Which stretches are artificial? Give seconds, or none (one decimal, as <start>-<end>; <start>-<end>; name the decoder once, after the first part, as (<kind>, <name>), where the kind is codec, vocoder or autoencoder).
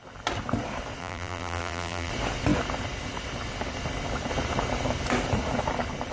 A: 1.0-2.1 (vocoder, BigVGAN v2)